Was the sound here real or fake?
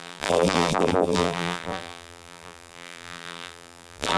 fake